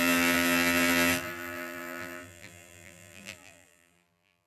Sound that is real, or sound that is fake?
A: fake